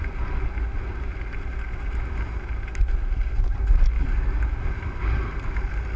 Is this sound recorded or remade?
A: recorded